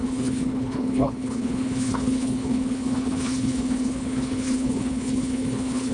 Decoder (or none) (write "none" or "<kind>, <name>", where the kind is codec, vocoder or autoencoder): codec, HILCodec